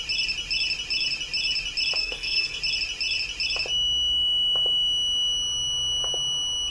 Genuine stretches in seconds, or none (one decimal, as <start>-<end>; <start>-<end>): 0.0-2.0; 2.6-6.7